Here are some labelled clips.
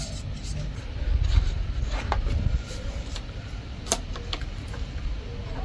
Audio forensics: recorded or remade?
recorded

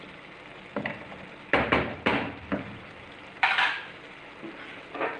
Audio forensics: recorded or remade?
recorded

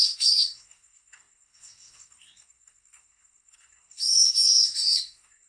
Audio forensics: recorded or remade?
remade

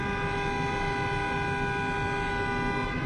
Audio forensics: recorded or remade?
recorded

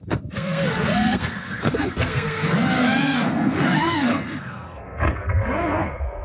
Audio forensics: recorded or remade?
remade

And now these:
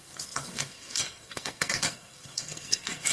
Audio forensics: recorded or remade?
remade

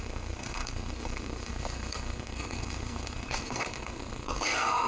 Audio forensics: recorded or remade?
remade